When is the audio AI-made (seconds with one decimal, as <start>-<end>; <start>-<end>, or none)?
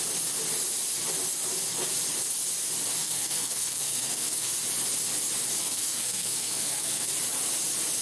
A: 3.0-4.5; 5.6-7.1